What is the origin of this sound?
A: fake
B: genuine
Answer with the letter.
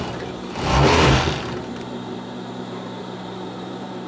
A